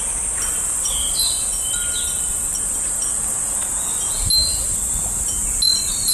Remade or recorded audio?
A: recorded